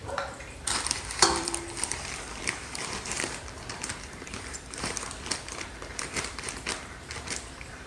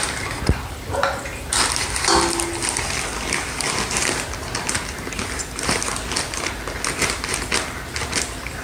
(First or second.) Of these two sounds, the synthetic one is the first